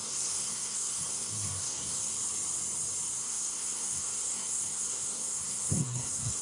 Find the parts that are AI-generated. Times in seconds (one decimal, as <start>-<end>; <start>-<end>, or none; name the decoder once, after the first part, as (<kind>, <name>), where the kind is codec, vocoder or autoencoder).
0.0-2.1 (codec, SNAC); 3.2-6.4